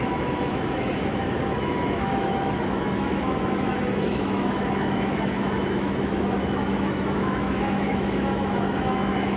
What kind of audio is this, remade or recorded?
remade